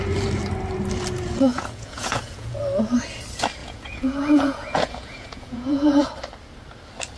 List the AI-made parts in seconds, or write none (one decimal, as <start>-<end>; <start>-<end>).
1.5-2.6; 3.6-6.1